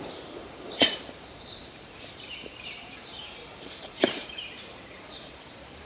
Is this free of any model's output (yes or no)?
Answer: no